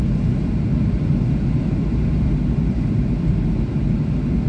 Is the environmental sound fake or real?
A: real